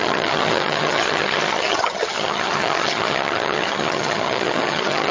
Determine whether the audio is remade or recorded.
remade